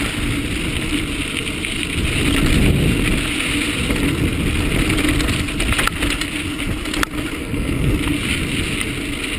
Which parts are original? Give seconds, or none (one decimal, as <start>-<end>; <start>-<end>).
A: 0.0-7.4; 7.9-9.4